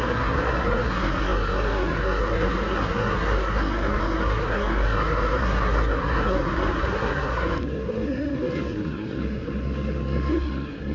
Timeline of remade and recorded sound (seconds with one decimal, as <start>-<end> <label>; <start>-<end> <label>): 0.0-10.9 remade